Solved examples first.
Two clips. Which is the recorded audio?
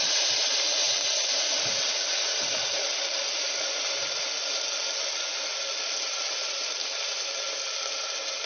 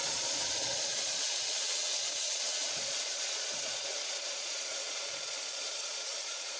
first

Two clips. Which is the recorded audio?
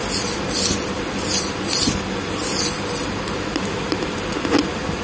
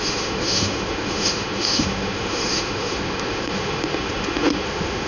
first